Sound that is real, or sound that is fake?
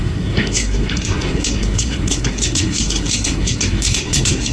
fake